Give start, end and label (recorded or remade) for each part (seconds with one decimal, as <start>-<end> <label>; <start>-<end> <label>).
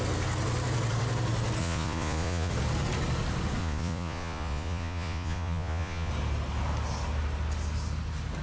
0.0-1.6 recorded; 1.6-2.5 remade; 2.5-3.6 recorded; 3.6-6.1 remade; 6.1-8.4 recorded